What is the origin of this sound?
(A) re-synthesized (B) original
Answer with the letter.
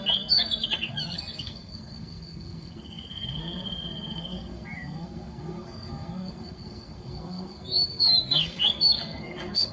A